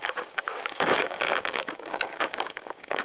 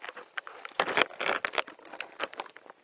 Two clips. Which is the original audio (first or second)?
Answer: second